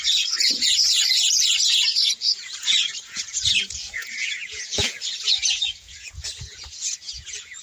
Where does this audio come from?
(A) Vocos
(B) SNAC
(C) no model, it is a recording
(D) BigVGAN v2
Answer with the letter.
A